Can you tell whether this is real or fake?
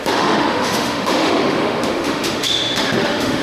fake